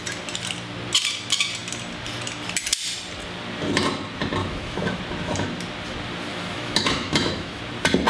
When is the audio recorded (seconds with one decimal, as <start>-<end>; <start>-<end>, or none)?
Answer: 0.0-4.4; 5.0-6.3; 7.6-8.1